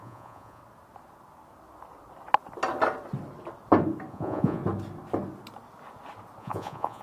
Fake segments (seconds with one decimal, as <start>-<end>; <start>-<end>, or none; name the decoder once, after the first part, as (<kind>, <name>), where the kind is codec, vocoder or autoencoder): 0.0-0.6 (vocoder, Vocos); 4.1-4.6; 6.4-7.0